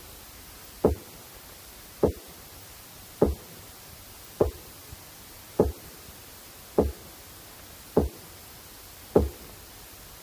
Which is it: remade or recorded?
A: recorded